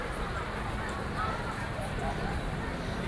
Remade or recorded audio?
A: remade